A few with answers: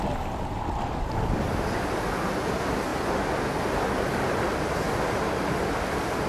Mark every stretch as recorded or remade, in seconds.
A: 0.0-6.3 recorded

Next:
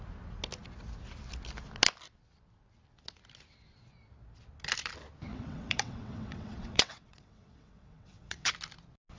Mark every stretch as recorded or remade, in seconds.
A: 0.0-5.3 recorded; 5.3-8.5 remade; 8.5-9.2 recorded